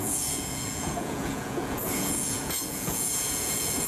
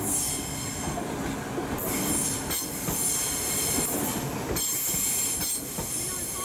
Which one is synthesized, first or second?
first